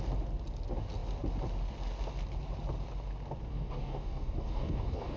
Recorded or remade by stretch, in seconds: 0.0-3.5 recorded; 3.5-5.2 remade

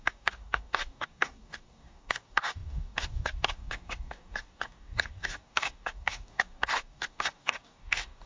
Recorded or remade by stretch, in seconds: 0.0-8.3 remade

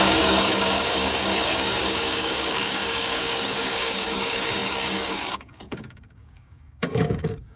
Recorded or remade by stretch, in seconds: 0.0-7.6 remade

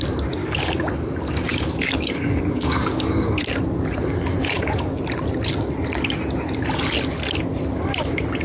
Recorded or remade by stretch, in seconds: 0.0-0.4 recorded; 0.4-0.9 remade; 0.9-1.5 recorded; 1.5-3.4 remade; 3.4-4.4 recorded; 4.4-5.0 remade; 5.0-8.4 recorded